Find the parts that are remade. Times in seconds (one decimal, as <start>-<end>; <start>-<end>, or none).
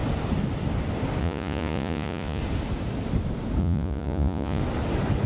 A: 1.2-2.4; 3.6-4.6